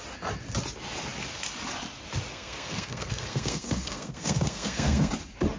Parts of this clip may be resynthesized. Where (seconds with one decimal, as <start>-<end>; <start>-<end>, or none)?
2.3-5.1